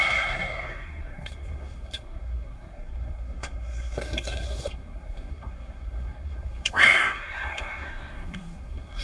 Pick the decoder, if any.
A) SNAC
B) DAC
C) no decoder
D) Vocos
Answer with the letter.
A